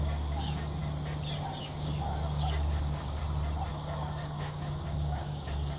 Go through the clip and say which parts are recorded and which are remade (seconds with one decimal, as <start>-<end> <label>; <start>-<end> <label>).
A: 0.0-0.8 remade; 0.8-1.6 recorded; 1.6-3.2 remade; 3.2-3.7 recorded; 3.7-5.8 remade